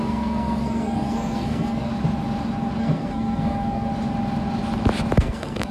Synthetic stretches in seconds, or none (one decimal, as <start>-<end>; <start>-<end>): 0.0-1.9; 2.8-3.9; 5.2-5.7